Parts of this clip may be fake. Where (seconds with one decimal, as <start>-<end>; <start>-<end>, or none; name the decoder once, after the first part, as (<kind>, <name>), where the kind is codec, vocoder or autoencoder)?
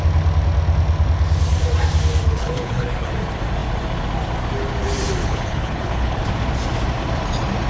2.2-3.1 (codec, HILCodec); 5.2-6.2